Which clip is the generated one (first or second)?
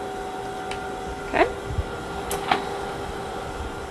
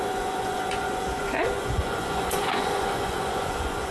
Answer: second